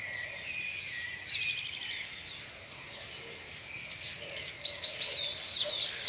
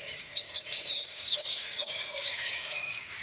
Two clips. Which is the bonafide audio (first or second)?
first